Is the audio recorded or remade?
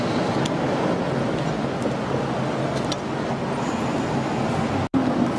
recorded